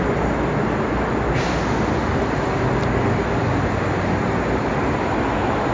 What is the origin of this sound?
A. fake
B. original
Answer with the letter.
B